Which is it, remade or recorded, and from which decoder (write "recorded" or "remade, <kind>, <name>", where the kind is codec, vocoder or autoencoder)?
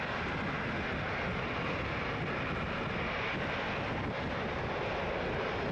recorded